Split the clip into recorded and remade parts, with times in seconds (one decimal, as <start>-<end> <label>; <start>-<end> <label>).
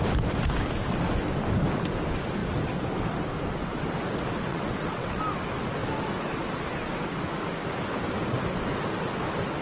0.0-4.5 recorded; 4.5-5.2 remade; 5.2-9.6 recorded